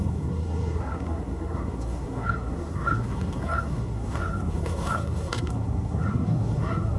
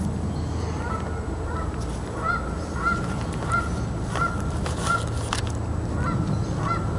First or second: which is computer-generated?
first